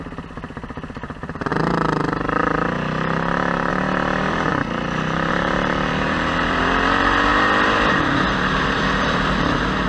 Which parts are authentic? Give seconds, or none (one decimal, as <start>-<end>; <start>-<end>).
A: 1.5-3.7; 4.5-5.3